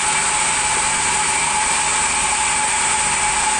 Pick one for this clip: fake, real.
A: real